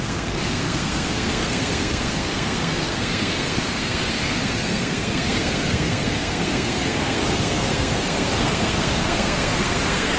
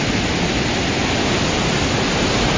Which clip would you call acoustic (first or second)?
second